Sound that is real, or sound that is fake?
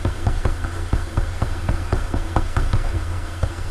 fake